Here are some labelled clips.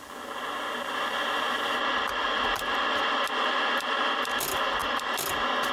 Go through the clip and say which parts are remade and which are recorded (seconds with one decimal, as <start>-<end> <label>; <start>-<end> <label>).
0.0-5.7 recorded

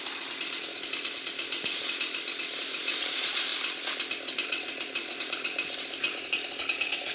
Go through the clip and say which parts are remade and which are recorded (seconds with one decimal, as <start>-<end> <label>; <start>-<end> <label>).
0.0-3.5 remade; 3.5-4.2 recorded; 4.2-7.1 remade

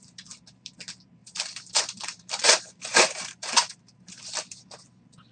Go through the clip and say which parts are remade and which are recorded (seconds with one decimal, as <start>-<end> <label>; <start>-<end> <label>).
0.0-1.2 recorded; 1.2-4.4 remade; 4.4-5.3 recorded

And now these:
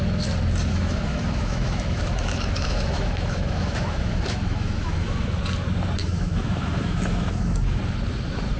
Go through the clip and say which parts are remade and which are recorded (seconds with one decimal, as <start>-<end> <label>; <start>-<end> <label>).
0.0-0.7 recorded; 0.7-5.4 remade; 5.4-6.0 recorded; 6.0-7.8 remade; 7.8-8.6 recorded

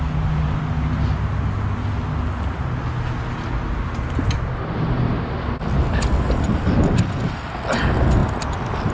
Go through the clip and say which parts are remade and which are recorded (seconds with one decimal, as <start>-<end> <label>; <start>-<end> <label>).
0.0-8.9 recorded

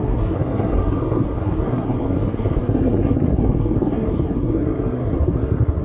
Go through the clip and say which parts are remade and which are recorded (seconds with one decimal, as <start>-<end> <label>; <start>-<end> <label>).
0.0-5.8 remade